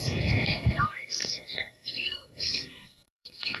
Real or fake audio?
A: fake